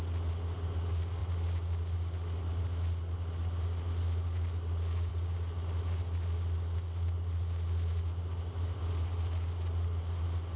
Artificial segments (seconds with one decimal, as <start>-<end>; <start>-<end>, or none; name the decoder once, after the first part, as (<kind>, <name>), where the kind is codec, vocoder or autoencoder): none